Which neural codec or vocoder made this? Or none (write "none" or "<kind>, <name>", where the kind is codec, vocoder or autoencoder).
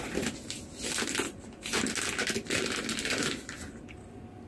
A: none